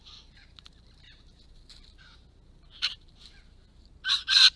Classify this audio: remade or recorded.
recorded